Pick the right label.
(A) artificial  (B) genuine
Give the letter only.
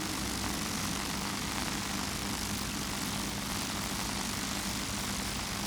B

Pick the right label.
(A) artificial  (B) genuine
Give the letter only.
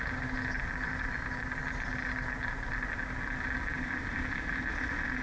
B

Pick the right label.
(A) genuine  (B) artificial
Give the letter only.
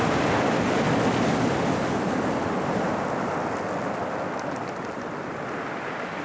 A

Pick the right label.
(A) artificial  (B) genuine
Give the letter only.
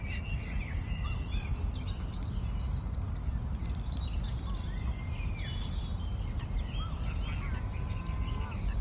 B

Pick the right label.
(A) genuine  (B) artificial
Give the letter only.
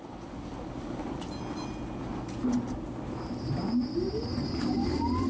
A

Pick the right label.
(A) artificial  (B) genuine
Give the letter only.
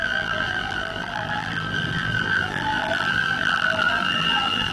A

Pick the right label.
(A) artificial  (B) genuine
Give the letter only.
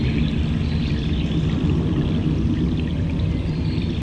B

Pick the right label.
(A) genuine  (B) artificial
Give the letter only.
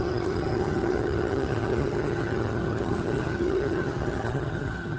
B